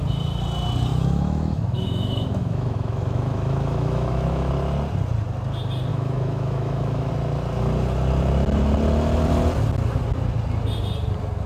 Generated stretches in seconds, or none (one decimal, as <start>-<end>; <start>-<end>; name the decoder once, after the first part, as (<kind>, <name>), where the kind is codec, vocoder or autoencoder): 0.9-4.5 (autoencoder, DAC-VAE); 5.9-7.1